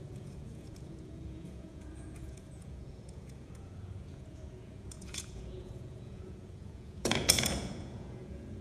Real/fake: fake